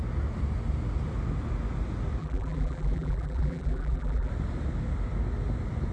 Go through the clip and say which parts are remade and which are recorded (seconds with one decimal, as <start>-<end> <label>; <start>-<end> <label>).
0.0-2.2 recorded; 2.2-4.3 remade; 4.3-5.9 recorded